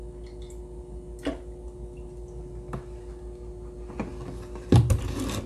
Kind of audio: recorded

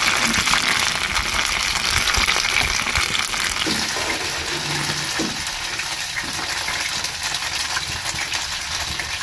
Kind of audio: recorded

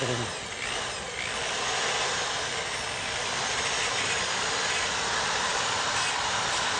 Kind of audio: recorded